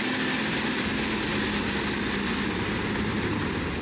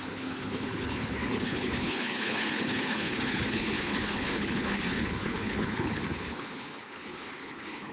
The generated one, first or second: second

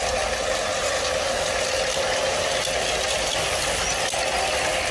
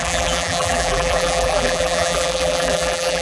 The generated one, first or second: second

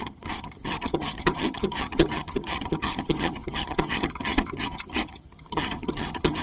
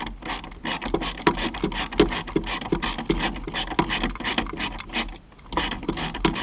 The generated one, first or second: first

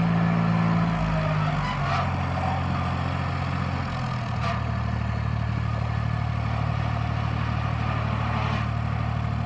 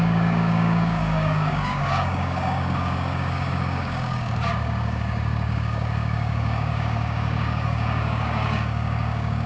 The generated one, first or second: second